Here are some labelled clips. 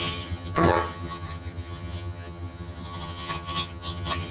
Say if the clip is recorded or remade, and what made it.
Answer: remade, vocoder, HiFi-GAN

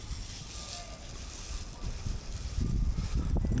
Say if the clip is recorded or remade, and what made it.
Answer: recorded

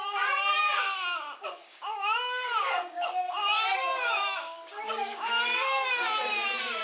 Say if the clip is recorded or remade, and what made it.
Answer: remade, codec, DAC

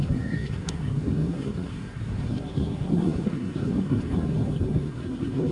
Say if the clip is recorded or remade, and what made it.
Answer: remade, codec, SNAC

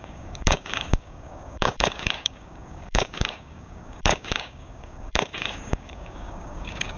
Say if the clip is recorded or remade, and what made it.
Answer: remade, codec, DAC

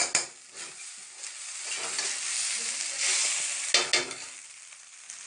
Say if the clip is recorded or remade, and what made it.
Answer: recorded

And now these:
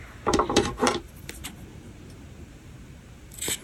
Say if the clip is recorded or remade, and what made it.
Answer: remade, vocoder, BigVGAN v2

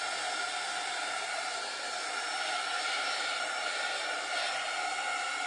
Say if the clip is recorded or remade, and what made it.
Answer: recorded